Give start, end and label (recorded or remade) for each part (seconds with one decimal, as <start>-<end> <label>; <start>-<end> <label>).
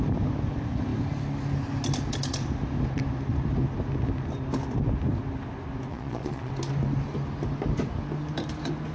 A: 0.0-5.9 recorded; 5.9-6.5 remade; 6.5-8.9 recorded